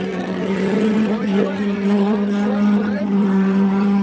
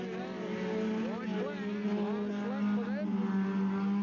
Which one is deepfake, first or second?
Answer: first